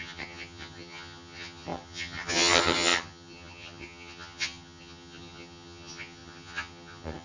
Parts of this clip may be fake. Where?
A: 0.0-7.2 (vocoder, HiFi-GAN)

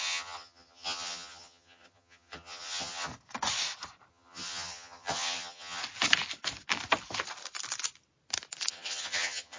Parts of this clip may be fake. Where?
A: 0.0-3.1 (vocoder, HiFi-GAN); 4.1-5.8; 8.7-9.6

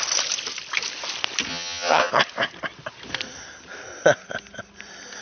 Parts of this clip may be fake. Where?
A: 1.5-2.1 (vocoder, HiFi-GAN)

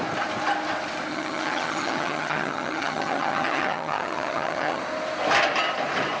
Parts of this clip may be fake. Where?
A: 1.1-4.8 (vocoder, HiFi-GAN)

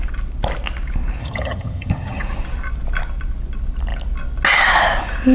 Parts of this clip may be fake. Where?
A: 1.2-2.2 (vocoder, HiFi-GAN)

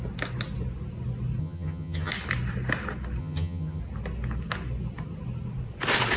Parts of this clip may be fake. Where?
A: 1.4-2.1 (vocoder, HiFi-GAN); 3.2-3.8

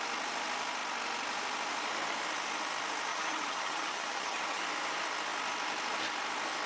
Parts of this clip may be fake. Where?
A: 3.1-4.6 (vocoder, HiFi-GAN)